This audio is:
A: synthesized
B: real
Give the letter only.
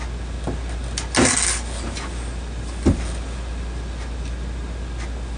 B